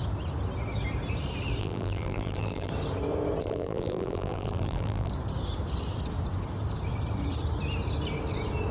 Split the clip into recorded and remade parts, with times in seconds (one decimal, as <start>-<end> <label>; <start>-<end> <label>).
0.0-1.6 recorded; 1.6-2.7 remade; 2.7-3.4 recorded; 3.4-5.1 remade; 5.1-8.7 recorded